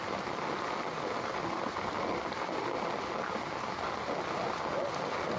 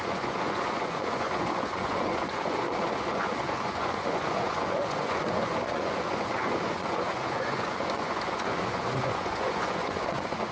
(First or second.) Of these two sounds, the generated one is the second